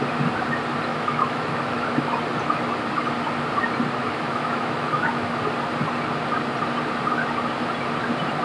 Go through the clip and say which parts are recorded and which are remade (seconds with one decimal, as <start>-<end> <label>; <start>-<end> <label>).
0.0-0.9 recorded; 0.9-2.1 remade; 2.1-4.0 recorded; 4.0-5.3 remade; 5.3-8.4 recorded